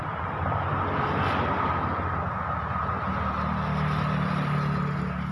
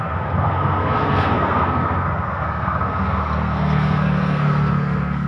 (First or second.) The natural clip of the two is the first